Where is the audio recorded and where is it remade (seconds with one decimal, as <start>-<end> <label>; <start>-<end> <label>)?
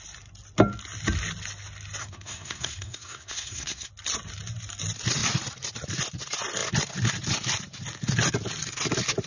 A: 0.0-2.0 recorded; 2.0-3.9 remade; 3.9-9.3 recorded